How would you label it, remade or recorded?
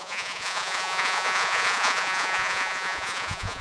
remade